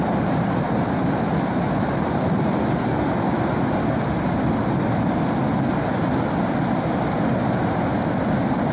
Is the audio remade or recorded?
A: recorded